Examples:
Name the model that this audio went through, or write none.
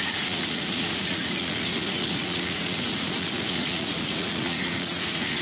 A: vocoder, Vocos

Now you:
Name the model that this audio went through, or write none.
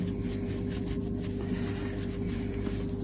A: none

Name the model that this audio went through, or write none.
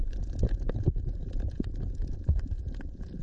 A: vocoder, Vocos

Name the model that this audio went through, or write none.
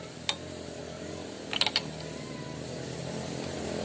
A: none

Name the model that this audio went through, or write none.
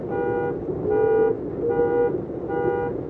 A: none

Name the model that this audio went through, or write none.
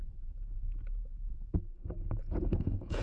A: vocoder, Vocos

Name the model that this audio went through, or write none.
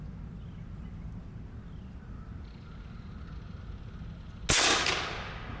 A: none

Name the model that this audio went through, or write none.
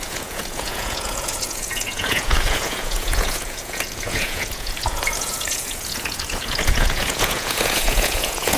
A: vocoder, Vocos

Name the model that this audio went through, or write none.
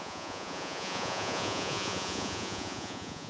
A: vocoder, Vocos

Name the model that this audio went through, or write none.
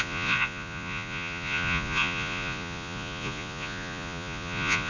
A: vocoder, Vocos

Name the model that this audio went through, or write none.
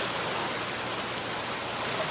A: none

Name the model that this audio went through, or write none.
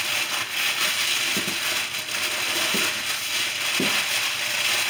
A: none